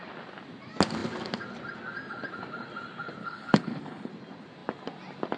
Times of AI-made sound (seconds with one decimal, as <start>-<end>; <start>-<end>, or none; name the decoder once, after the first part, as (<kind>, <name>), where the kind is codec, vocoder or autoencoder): 3.2-4.1 (codec, HILCodec)